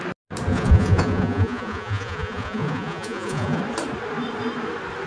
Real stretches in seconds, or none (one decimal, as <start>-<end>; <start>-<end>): 0.0-0.5; 3.6-5.1